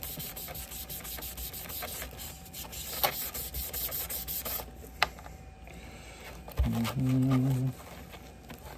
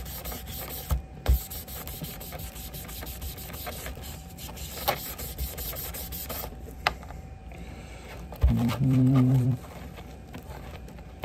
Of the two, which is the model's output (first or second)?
second